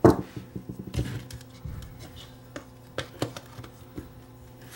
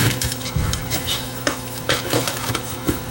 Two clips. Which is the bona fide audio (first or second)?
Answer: first